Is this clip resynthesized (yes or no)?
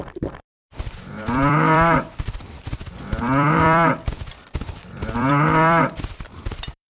yes